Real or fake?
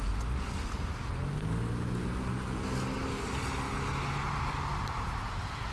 real